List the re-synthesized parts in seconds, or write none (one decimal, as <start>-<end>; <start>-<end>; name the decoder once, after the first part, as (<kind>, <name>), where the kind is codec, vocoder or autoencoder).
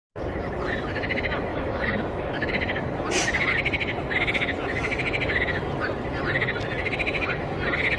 1.5-2.5 (autoencoder, DAC-VAE)